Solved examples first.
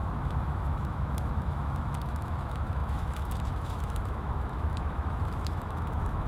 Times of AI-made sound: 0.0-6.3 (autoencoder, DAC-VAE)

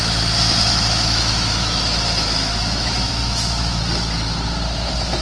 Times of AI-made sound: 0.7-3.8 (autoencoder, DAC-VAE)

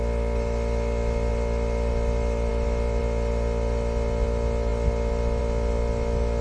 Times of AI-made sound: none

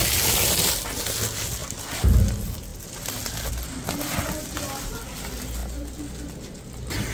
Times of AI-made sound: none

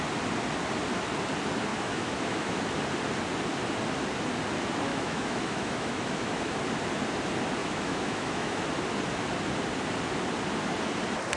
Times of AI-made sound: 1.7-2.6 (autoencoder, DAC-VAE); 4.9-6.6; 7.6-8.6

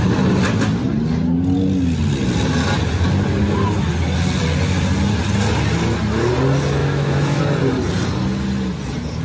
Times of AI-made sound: 6.8-7.4 (autoencoder, DAC-VAE)

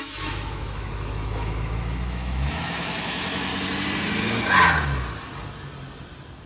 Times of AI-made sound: 0.0-3.5 (autoencoder, DAC-VAE)